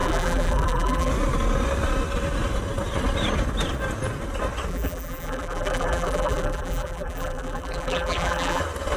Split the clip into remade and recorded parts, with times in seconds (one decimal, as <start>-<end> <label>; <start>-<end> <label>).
0.0-1.1 remade; 1.1-4.7 recorded; 4.7-8.6 remade; 8.6-9.0 recorded